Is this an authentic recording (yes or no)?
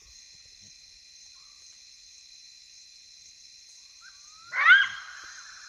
yes